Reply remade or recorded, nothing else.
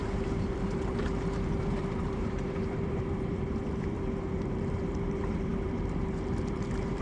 remade